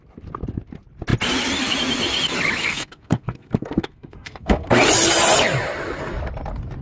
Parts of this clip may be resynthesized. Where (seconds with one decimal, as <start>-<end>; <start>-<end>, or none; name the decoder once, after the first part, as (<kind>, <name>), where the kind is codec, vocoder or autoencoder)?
2.6-4.7 (codec, SNAC)